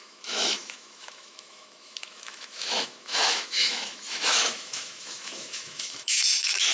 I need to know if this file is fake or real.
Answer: fake